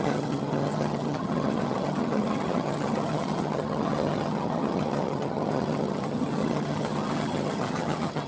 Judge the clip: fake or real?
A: fake